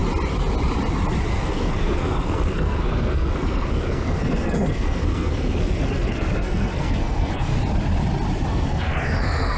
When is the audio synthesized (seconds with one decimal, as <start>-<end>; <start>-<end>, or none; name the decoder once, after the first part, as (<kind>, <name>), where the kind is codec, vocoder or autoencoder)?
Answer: 1.3-7.5 (codec, SNAC); 8.5-9.6

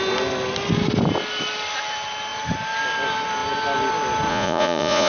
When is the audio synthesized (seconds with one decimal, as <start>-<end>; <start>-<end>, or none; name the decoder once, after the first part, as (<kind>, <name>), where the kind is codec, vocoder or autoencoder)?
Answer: 4.3-5.1 (vocoder, Vocos)

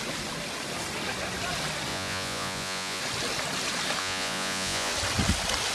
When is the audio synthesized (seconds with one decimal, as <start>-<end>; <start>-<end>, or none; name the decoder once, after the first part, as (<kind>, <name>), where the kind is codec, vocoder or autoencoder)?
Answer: 1.9-3.0 (vocoder, Vocos); 4.0-4.9

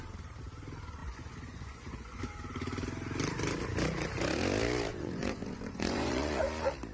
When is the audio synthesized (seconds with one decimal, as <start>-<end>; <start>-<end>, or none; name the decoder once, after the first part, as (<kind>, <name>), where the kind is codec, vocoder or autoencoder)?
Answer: 1.0-2.2 (vocoder, Vocos); 4.9-6.4

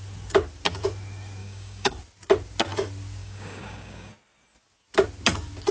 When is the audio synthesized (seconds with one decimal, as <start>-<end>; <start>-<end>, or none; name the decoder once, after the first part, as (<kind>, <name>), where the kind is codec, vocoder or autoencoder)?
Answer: 1.4-1.9 (codec, DAC); 3.2-4.1